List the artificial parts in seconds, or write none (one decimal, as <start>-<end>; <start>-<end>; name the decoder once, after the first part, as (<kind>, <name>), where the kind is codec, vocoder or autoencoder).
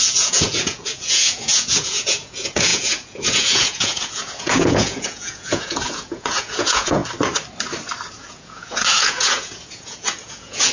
0.0-7.0 (vocoder, Vocos); 8.1-10.7